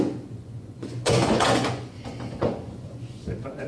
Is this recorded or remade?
remade